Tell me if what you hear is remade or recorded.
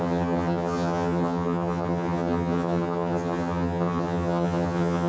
remade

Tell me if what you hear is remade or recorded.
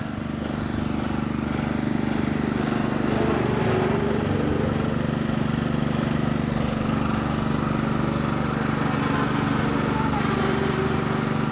recorded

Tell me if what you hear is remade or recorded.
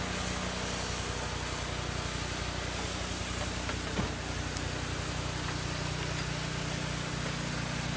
recorded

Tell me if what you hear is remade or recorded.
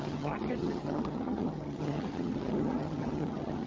remade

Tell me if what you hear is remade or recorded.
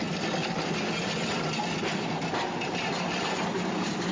recorded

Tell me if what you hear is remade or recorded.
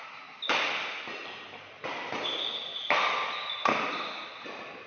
recorded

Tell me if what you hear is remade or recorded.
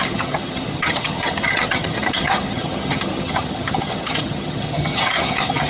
remade